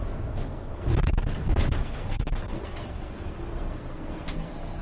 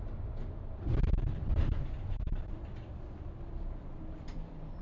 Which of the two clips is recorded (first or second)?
second